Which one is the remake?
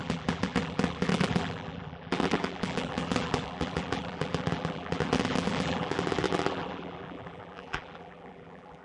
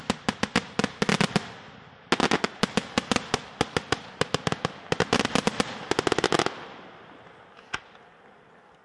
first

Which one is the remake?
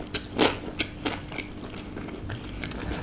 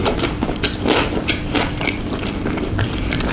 second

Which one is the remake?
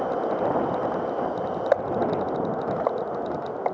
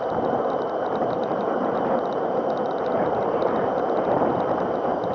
second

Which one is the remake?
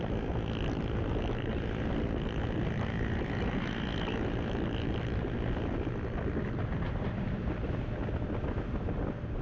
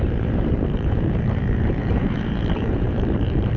second